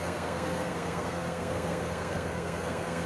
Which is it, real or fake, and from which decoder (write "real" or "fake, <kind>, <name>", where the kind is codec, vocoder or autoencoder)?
fake, codec, SNAC